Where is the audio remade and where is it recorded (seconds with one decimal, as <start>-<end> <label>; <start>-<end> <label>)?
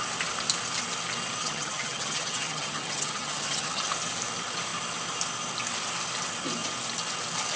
0.0-1.4 recorded; 1.4-3.9 remade; 3.9-7.6 recorded